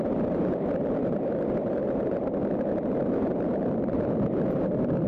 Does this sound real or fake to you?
fake